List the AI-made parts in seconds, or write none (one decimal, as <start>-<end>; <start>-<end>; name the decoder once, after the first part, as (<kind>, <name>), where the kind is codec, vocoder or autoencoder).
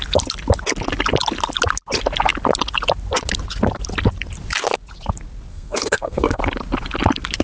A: 5.5-6.4 (codec, SNAC)